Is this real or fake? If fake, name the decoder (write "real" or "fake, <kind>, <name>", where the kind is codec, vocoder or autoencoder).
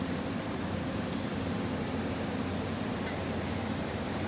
fake, vocoder, BigVGAN v2